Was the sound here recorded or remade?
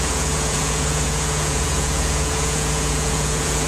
remade